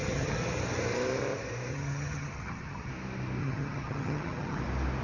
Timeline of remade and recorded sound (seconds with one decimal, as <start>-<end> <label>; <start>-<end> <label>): 0.0-0.5 remade; 0.5-1.7 recorded; 1.7-2.9 remade; 2.9-3.4 recorded; 3.4-4.6 remade; 4.6-5.0 recorded